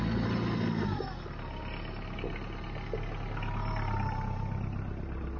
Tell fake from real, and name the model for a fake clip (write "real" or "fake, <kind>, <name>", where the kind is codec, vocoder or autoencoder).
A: real